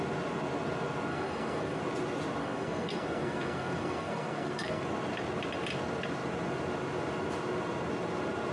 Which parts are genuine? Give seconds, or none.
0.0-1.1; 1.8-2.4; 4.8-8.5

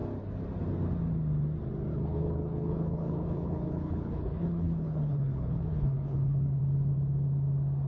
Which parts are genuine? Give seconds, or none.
0.0-1.9; 6.6-7.9

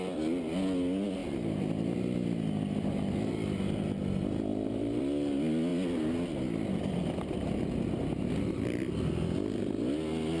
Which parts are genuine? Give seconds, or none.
0.0-4.5; 5.0-10.4

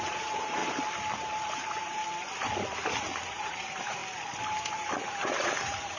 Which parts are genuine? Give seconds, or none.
0.6-1.4; 2.0-3.0; 4.0-4.7